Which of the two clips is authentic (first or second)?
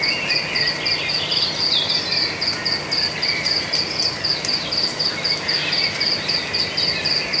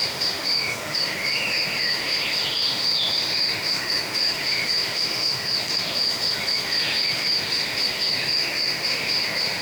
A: first